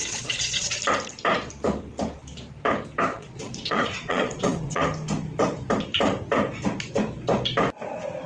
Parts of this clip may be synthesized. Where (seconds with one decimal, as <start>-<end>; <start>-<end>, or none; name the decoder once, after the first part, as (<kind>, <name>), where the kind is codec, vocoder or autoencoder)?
0.0-0.8 (vocoder, Vocos); 3.1-4.8